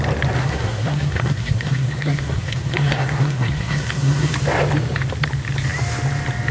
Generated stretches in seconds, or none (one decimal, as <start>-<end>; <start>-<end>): 0.4-4.3